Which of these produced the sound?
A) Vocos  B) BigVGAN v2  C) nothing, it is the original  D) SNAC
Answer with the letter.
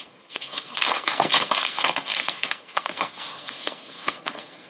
D